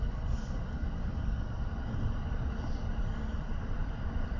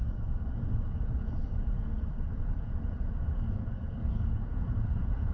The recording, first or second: first